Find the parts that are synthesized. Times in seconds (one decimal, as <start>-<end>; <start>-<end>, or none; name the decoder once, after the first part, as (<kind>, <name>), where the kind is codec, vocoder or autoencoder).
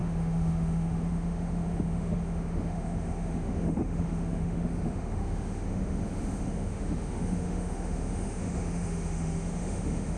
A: 0.0-10.2 (autoencoder, DAC-VAE)